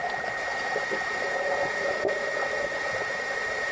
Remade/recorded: recorded